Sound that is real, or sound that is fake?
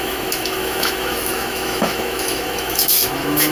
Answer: fake